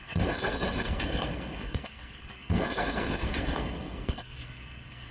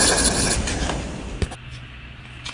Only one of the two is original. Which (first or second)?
second